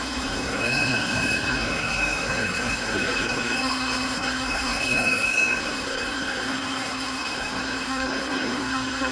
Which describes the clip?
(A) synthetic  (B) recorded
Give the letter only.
A